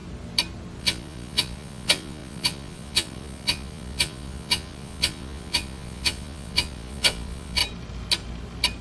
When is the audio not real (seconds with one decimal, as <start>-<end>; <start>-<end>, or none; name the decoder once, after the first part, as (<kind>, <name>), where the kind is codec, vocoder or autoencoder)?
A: 0.8-7.6 (vocoder, Vocos)